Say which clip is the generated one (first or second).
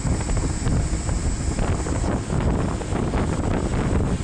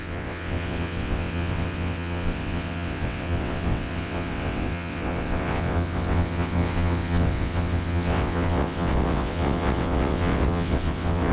second